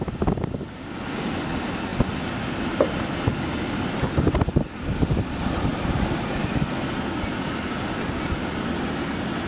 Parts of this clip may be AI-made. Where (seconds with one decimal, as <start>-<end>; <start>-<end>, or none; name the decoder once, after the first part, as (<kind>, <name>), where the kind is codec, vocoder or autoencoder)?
5.7-6.6 (vocoder, BigVGAN v2)